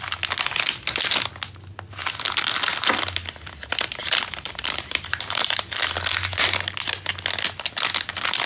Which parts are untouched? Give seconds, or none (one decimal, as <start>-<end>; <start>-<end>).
0.0-4.0; 5.6-8.5